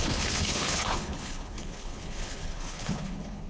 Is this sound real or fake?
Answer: fake